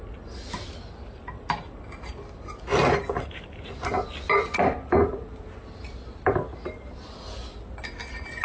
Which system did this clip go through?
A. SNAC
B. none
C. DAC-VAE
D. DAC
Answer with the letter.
B